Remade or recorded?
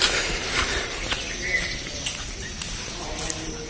recorded